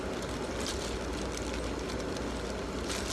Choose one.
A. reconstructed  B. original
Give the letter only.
B